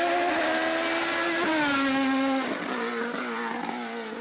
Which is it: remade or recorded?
recorded